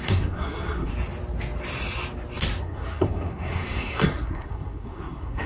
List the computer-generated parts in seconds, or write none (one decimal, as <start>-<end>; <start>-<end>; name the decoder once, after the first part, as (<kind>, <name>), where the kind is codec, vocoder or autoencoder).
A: 0.0-0.9 (codec, SNAC); 2.6-5.5